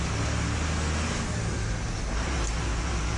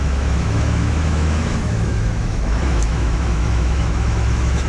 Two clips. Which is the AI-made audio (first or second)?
second